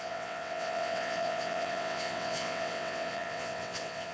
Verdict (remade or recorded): remade